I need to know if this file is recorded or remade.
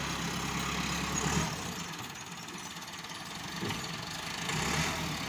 recorded